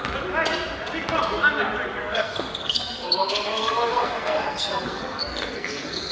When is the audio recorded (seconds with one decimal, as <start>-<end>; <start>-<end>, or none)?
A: 0.0-2.0